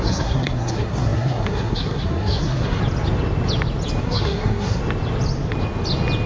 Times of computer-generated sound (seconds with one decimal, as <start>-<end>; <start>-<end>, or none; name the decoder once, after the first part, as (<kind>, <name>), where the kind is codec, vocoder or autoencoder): 0.0-2.8 (codec, SNAC); 4.0-4.8